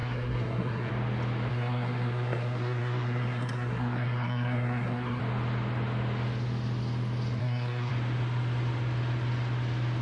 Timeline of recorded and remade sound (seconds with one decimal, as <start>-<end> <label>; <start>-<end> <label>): 0.0-0.9 remade; 0.9-1.5 recorded; 1.5-5.2 remade; 5.2-7.4 recorded; 7.4-7.9 remade; 7.9-10.0 recorded